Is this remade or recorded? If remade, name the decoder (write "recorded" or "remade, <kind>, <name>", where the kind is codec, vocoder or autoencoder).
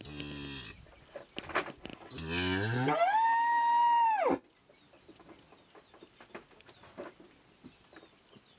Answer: recorded